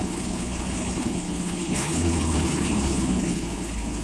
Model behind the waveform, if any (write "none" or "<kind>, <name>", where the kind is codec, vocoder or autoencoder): codec, HILCodec